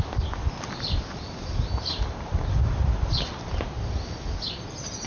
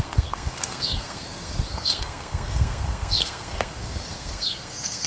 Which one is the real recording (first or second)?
first